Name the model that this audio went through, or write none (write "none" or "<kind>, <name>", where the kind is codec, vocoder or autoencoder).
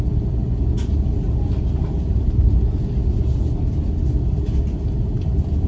none